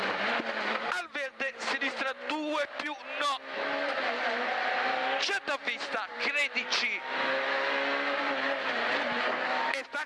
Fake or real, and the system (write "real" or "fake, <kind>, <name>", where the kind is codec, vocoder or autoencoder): real